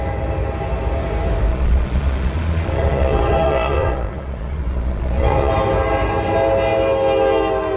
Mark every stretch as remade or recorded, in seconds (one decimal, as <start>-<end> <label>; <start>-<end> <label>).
0.0-1.5 recorded; 1.5-5.5 remade; 5.5-7.8 recorded